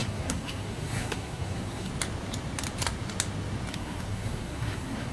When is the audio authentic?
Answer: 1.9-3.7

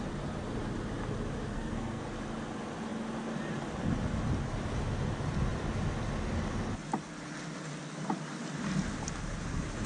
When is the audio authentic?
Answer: 0.0-1.5; 2.0-9.9